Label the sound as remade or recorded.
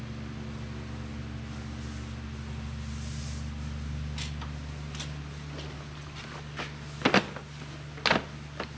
recorded